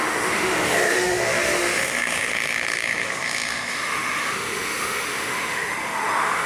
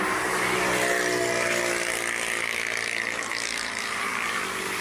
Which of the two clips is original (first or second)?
second